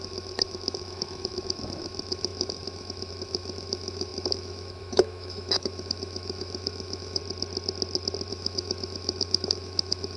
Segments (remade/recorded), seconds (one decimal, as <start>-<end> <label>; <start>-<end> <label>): 0.0-7.2 remade; 7.2-8.3 recorded; 8.3-10.2 remade